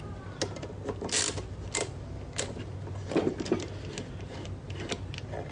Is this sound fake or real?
real